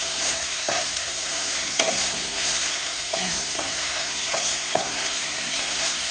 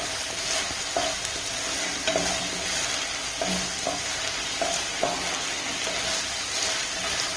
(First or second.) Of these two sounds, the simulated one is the first